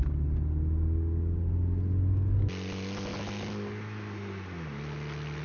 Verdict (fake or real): real